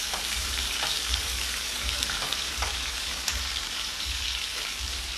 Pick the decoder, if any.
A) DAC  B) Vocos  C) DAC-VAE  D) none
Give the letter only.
A